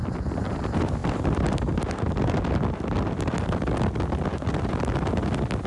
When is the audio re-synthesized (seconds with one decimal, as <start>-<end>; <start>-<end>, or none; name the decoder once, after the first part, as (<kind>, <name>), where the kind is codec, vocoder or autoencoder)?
none